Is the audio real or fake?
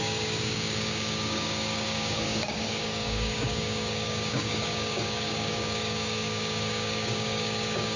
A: fake